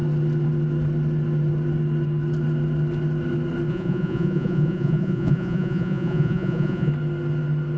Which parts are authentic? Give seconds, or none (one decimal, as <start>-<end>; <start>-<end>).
0.0-3.7; 6.9-7.8